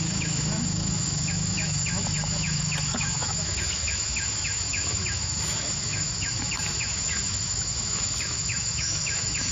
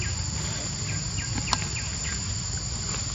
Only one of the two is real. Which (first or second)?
second